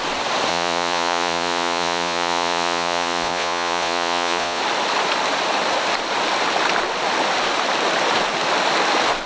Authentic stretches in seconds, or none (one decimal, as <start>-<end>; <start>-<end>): 0.0-0.5; 4.6-9.3